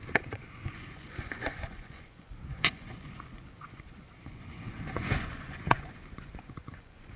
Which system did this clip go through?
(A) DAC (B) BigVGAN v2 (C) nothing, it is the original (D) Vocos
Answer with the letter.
D